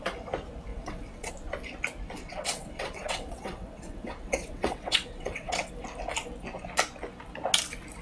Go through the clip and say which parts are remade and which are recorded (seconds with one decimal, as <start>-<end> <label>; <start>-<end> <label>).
0.0-0.7 recorded; 0.7-1.3 remade; 1.3-2.2 recorded; 2.2-5.7 remade; 5.7-8.0 recorded